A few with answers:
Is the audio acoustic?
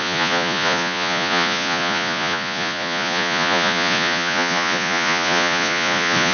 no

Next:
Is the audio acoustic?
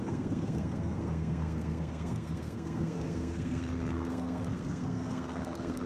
no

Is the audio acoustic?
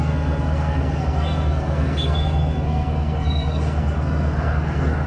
no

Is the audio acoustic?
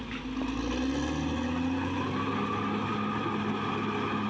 yes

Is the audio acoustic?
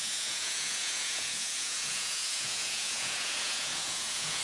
no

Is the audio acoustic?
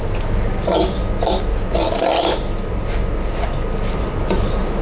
yes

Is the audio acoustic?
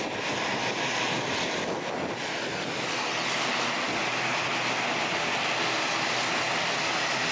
yes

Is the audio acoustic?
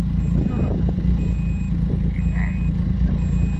yes